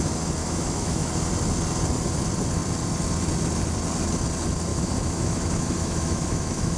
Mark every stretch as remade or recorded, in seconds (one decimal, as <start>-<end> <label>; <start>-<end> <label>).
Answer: 0.0-0.4 recorded; 0.4-1.1 remade; 1.1-4.7 recorded; 4.7-6.8 remade